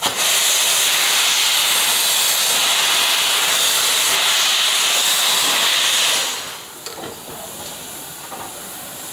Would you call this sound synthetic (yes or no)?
no